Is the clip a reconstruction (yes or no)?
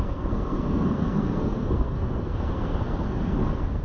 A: yes